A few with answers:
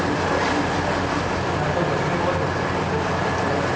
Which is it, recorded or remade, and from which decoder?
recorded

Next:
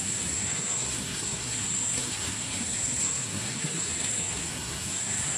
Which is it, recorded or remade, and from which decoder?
remade, codec, SNAC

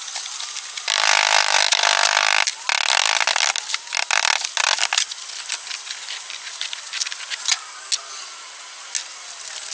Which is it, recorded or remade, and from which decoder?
recorded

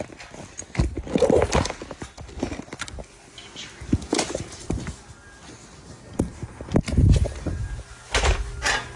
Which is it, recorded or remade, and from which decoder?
recorded